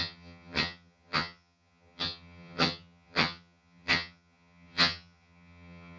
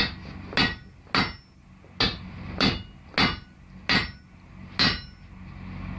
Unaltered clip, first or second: second